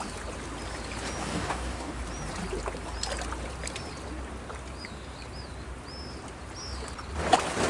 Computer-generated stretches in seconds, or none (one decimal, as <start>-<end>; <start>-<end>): 1.2-2.0